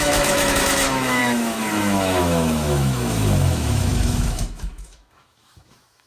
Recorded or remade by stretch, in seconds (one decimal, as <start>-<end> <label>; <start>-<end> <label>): 0.0-6.1 remade